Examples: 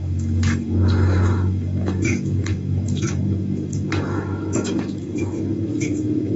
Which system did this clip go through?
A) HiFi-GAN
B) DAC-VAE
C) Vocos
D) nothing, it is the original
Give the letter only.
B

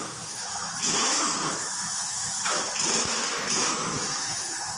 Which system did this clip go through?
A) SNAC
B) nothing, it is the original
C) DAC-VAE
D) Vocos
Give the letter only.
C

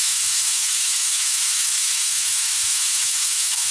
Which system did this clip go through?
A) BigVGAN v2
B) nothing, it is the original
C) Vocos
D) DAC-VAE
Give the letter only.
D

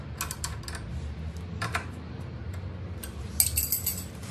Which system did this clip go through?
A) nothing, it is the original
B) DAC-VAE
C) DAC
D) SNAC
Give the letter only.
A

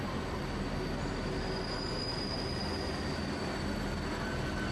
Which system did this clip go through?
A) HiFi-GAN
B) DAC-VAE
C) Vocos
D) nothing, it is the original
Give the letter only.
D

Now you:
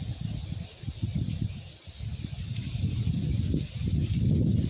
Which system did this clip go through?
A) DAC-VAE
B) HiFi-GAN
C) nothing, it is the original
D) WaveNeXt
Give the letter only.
C